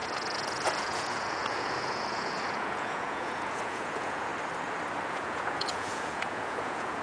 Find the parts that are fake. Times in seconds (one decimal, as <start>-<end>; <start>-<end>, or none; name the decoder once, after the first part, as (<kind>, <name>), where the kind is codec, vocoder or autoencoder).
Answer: 0.0-4.3 (vocoder, Vocos); 5.1-7.0